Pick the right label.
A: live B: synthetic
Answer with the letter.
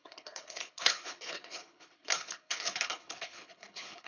B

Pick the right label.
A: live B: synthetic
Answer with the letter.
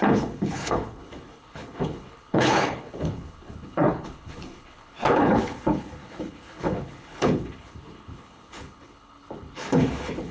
B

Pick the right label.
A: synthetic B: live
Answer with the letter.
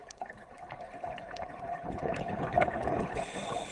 A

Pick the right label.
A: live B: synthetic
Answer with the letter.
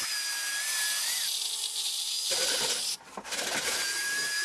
A